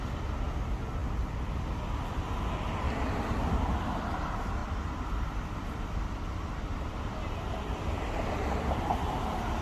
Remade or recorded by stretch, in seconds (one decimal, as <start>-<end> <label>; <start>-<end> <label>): 0.0-4.6 recorded; 4.6-8.3 remade; 8.3-9.6 recorded